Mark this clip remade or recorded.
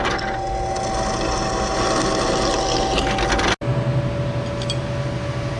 recorded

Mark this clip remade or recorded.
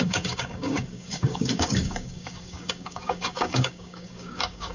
remade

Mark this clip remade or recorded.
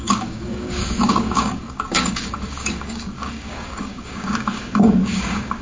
remade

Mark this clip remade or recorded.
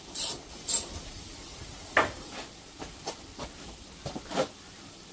recorded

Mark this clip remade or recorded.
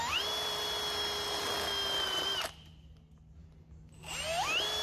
recorded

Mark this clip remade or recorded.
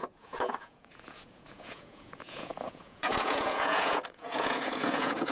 remade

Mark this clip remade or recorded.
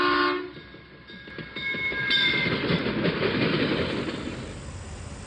recorded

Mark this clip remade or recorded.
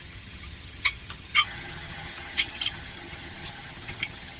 remade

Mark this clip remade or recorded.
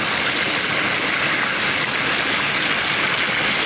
recorded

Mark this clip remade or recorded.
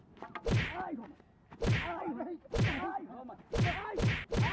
recorded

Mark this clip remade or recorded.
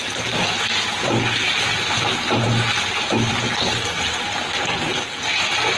recorded